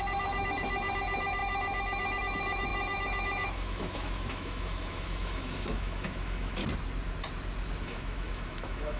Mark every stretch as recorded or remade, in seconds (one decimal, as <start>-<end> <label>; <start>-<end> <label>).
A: 0.0-6.6 remade; 6.6-7.8 recorded; 7.8-9.0 remade